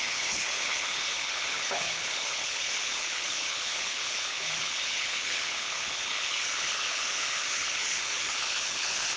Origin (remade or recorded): remade